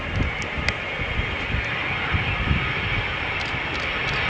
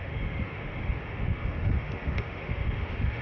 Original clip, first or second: first